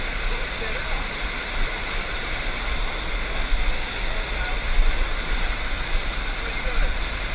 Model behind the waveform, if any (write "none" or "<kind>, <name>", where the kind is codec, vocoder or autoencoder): none